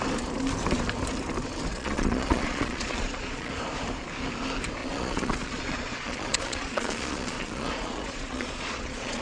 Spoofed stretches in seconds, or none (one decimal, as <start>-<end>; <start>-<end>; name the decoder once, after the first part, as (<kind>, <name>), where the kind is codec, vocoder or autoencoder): 1.7-3.5 (vocoder, Vocos); 4.8-9.2